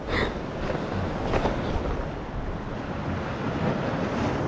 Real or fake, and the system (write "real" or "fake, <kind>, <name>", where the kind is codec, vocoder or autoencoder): real